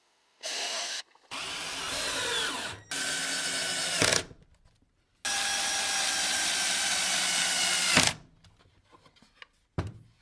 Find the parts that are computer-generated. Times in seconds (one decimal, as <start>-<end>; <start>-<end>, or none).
0.0-1.0